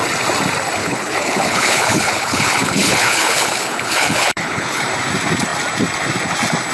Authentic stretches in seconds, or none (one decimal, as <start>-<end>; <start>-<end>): 0.0-0.8; 4.8-6.7